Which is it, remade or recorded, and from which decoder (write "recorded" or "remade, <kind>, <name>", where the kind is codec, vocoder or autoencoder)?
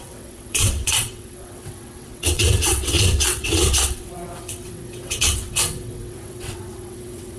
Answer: remade, vocoder, WaveNeXt